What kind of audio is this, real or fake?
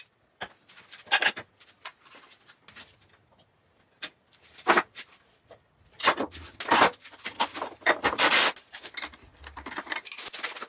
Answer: real